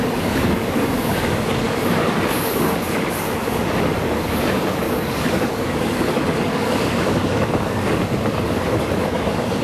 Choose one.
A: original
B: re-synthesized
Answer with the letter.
B